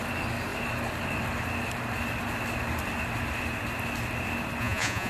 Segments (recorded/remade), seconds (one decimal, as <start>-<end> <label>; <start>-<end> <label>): 0.0-4.6 recorded; 4.6-5.1 remade